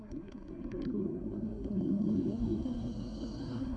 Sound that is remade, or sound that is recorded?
remade